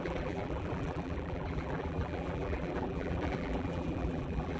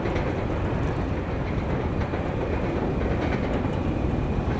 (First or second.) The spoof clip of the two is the first